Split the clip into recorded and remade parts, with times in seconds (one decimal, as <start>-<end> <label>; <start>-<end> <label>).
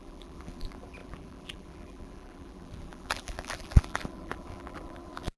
0.0-5.4 remade